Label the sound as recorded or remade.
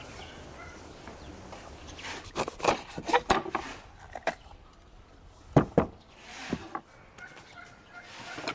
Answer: recorded